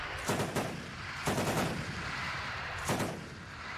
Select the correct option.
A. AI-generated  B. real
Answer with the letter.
A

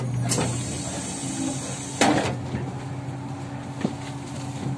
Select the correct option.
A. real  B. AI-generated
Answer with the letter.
A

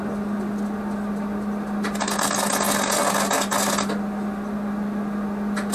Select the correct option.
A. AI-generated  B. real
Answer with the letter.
B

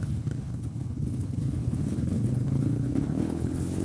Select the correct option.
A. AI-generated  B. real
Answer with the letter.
A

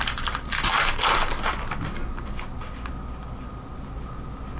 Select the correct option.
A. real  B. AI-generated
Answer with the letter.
A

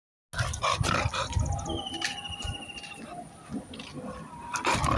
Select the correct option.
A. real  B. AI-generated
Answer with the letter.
A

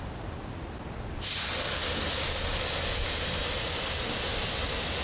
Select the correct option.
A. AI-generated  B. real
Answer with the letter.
B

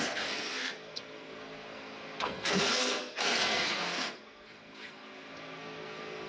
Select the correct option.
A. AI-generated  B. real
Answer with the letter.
A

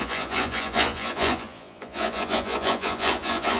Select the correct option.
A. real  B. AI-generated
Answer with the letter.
B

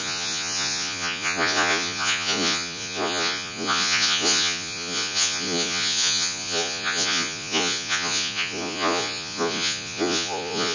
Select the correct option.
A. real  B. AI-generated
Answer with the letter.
B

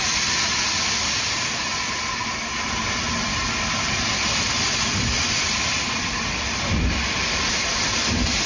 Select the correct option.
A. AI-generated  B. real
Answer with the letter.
B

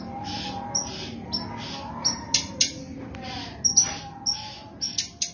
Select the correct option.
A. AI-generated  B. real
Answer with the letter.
B